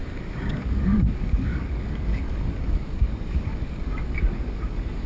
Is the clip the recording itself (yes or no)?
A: no